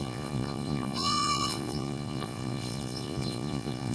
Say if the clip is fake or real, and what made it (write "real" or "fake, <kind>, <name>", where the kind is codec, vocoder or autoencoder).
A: fake, vocoder, Vocos